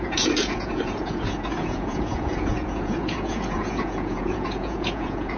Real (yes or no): no